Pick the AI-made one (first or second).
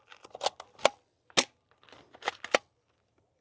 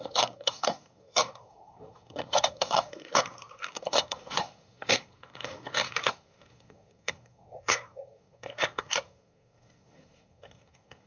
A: second